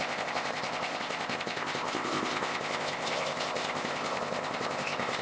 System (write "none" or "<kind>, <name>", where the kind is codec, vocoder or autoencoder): codec, ZipCodec